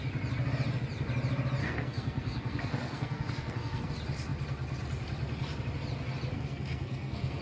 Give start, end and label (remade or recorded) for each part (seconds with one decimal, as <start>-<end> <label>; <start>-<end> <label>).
0.0-1.6 recorded; 1.6-3.9 remade; 3.9-6.3 recorded; 6.3-7.4 remade